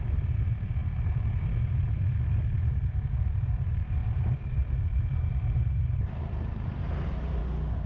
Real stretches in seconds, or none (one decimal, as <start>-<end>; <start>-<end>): 7.4-7.9